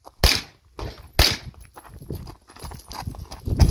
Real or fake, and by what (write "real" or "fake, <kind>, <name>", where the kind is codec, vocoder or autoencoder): real